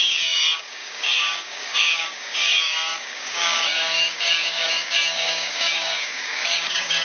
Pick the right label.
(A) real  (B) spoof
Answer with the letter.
B